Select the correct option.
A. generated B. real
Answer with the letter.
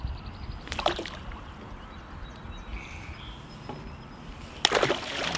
B